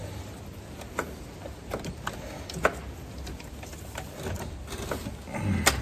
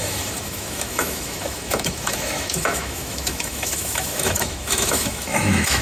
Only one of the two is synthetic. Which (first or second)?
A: second